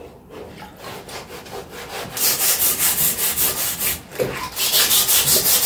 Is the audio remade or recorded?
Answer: recorded